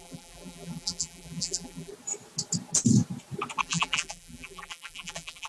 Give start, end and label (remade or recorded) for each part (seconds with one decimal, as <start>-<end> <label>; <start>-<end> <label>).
0.0-1.9 remade; 1.9-3.6 recorded; 3.6-5.5 remade